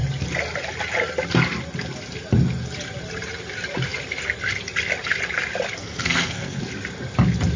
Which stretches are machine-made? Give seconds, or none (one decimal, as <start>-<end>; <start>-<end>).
5.8-6.6